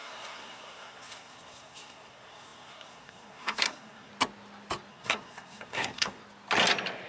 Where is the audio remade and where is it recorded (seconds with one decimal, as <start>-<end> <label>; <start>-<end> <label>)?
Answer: 0.0-4.1 remade; 4.1-4.9 recorded; 4.9-6.2 remade; 6.2-7.1 recorded